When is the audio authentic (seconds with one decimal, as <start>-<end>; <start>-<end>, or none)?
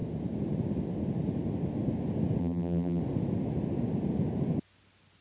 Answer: 0.0-2.4; 3.0-5.2